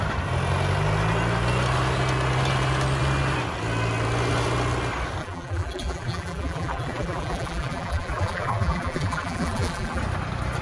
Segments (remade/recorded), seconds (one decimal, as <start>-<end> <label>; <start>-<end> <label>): 0.0-5.2 recorded; 5.2-10.0 remade; 10.0-10.6 recorded